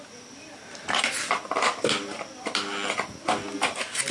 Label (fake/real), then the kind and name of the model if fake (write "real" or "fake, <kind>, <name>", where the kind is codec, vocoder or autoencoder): real